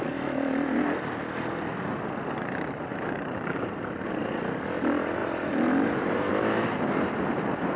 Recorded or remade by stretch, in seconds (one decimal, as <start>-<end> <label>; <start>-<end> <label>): 0.0-2.9 recorded; 2.9-4.3 remade; 4.3-5.2 recorded; 5.2-6.4 remade; 6.4-7.8 recorded